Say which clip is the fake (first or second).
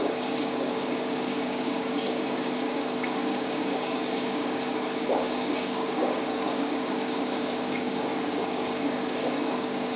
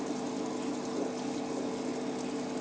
first